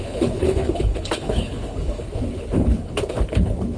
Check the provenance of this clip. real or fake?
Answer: fake